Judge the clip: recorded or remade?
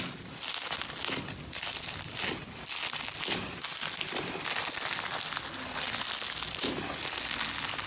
recorded